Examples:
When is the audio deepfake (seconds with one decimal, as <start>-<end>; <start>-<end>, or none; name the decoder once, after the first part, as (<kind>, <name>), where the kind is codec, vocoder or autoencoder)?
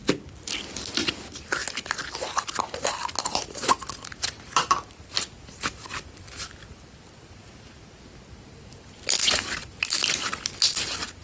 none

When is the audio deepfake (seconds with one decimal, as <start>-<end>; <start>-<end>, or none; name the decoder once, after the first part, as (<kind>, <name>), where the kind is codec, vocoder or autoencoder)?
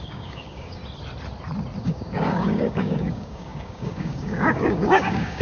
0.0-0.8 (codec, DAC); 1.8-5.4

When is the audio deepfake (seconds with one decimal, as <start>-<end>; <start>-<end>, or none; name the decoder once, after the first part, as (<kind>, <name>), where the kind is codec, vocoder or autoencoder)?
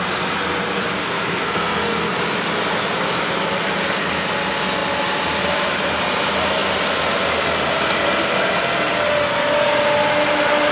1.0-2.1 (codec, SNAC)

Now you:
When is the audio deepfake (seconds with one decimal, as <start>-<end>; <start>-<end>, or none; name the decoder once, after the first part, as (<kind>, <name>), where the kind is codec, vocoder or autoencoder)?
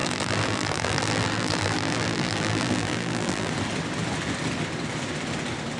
0.0-3.5 (vocoder, BigVGAN v2)